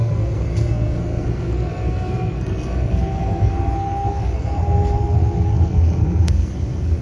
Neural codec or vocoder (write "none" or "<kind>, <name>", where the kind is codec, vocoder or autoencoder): codec, SNAC